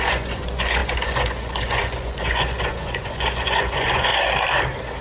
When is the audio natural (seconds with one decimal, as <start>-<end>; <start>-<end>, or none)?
4.1-5.0